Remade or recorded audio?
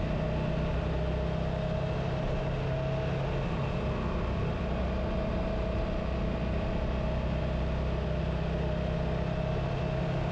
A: recorded